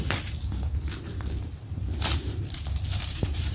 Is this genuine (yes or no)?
no